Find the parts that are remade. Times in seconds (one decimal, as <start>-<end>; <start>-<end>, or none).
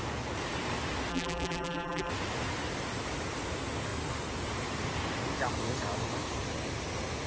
1.1-2.1